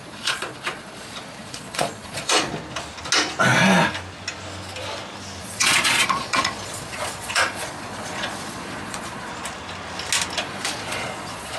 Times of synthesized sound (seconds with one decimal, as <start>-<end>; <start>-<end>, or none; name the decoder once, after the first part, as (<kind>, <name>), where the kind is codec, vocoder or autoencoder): 0.0-2.5 (vocoder, Vocos); 5.4-9.3; 10.4-11.6